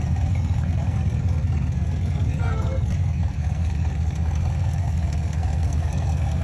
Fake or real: fake